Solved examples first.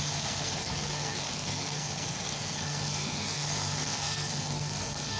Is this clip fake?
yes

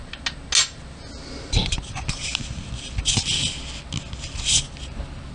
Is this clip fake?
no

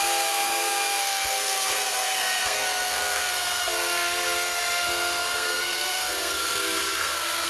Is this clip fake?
yes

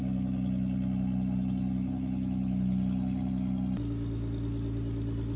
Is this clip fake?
no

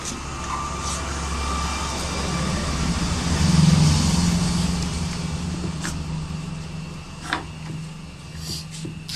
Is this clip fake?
no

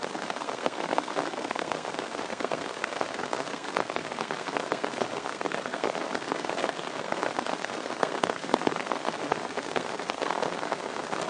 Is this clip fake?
yes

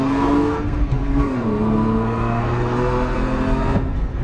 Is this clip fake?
yes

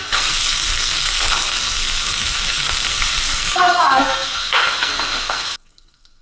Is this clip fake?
yes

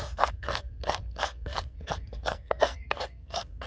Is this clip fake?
yes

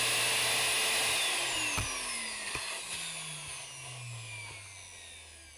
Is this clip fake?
no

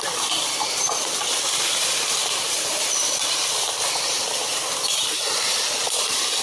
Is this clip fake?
no